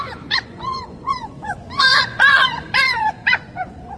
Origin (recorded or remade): remade